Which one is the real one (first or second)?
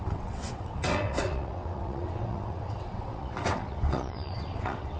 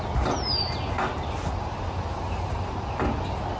second